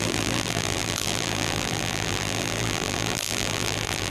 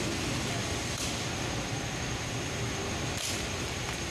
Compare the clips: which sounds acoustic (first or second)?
second